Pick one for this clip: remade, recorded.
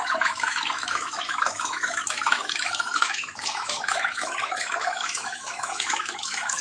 remade